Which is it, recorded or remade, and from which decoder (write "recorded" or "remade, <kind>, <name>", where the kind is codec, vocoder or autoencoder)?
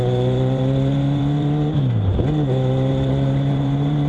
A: remade, vocoder, BigVGAN v2